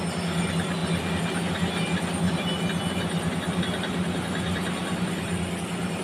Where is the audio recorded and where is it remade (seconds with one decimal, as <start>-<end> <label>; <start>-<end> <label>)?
0.0-6.0 recorded

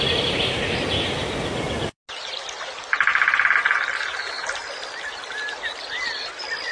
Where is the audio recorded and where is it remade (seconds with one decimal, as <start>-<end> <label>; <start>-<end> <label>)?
0.0-6.7 recorded

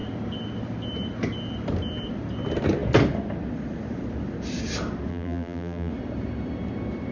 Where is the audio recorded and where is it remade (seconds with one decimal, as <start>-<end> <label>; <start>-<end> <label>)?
0.0-5.1 recorded; 5.1-5.9 remade; 5.9-7.1 recorded

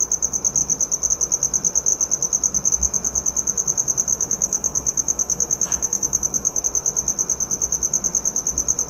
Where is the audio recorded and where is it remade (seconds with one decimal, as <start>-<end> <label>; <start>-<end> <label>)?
0.0-4.1 recorded; 4.1-6.6 remade; 6.6-8.9 recorded

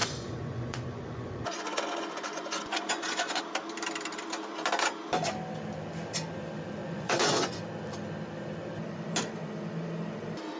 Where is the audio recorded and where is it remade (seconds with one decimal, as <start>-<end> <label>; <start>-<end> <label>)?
0.0-3.4 remade; 3.4-6.8 recorded; 6.8-7.6 remade; 7.6-10.6 recorded

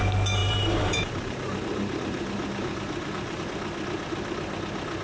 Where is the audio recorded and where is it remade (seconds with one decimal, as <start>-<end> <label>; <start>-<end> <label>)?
0.0-0.4 recorded; 0.4-3.4 remade; 3.4-5.0 recorded

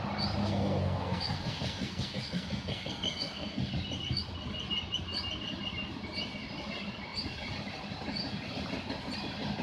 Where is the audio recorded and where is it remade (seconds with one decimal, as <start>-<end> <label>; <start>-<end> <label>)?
0.0-0.4 recorded; 0.4-3.7 remade; 3.7-9.6 recorded